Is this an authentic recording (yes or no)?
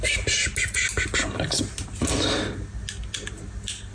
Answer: yes